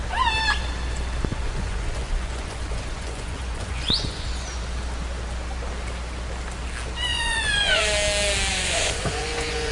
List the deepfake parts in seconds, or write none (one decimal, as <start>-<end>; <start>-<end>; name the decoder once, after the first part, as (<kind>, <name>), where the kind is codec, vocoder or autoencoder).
1.3-4.6 (vocoder, Vocos); 7.1-7.8; 8.5-9.7